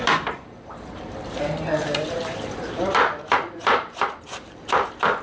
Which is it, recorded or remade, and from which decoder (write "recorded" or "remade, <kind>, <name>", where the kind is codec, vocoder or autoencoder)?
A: remade, vocoder, BigVGAN v2